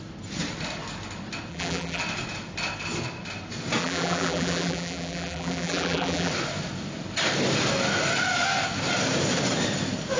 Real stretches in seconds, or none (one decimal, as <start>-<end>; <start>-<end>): 0.0-1.5; 2.0-3.8; 6.3-10.2